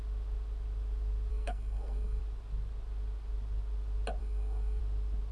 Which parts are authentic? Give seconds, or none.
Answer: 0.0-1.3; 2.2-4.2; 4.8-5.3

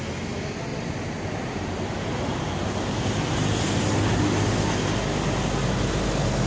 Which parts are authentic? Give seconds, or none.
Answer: 0.0-0.7; 4.2-6.5

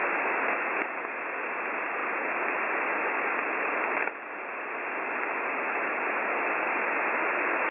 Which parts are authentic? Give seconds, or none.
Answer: 0.0-7.7

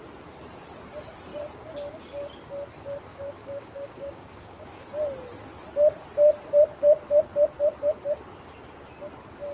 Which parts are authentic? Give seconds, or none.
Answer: 0.0-3.1; 4.9-9.5